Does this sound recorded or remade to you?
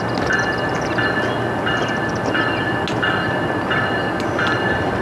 recorded